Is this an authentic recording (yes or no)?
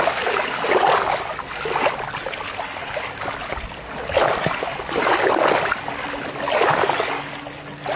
yes